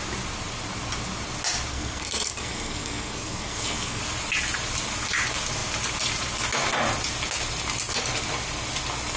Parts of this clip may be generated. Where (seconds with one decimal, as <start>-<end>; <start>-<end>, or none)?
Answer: 1.7-4.0